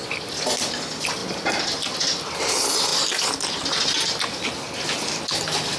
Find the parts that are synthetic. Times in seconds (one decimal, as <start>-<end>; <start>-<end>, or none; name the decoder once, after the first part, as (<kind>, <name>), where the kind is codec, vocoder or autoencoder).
none

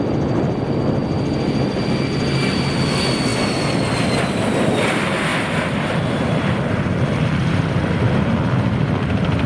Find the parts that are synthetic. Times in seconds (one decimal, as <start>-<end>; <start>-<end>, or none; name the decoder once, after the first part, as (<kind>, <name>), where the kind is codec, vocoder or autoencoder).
1.0-1.8 (vocoder, BigVGAN v2); 5.3-7.2

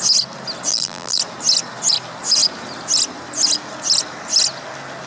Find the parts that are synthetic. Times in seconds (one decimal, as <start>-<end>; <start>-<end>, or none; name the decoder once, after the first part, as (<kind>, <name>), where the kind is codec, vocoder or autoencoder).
0.7-1.2 (vocoder, BigVGAN v2)

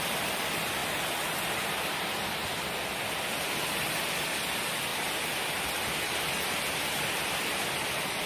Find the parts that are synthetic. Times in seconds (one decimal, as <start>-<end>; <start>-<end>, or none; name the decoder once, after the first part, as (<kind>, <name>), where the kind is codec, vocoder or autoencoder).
0.0-0.8 (vocoder, BigVGAN v2); 3.4-4.9; 6.0-8.3

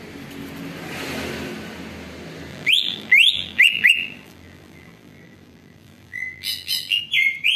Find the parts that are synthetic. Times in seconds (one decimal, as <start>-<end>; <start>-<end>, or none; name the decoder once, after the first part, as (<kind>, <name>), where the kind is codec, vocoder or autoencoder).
2.5-7.0 (vocoder, BigVGAN v2)

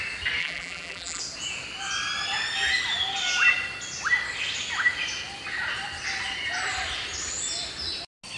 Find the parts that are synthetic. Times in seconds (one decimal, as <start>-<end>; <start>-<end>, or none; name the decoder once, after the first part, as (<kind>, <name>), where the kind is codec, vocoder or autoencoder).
0.4-1.2 (vocoder, BigVGAN v2)

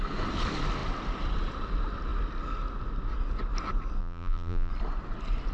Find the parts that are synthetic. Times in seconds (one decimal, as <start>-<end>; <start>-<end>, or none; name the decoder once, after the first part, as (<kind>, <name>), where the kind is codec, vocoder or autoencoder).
4.0-4.7 (vocoder, BigVGAN v2)

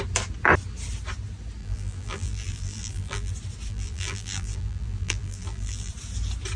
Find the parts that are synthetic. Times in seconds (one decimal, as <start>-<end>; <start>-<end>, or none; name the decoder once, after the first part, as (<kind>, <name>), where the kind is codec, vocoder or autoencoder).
1.6-3.3 (vocoder, BigVGAN v2); 3.7-5.9